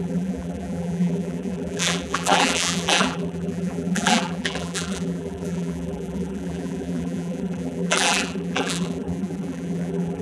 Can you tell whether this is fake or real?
fake